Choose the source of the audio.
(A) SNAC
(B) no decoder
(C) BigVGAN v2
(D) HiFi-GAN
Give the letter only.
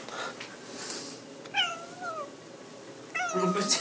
B